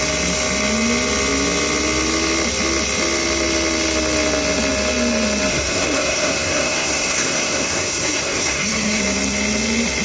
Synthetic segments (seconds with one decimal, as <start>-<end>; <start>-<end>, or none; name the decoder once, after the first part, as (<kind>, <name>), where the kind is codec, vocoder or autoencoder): 5.5-9.0 (codec, SNAC)